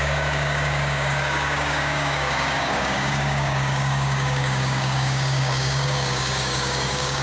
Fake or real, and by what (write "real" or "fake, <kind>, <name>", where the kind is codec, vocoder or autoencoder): fake, codec, DAC